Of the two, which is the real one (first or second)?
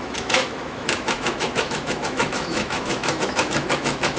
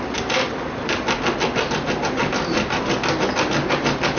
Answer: second